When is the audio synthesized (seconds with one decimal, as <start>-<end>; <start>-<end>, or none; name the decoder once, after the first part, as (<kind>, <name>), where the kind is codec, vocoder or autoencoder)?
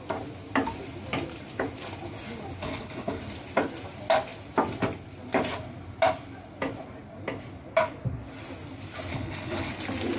2.6-3.2 (codec, HILCodec); 9.1-9.7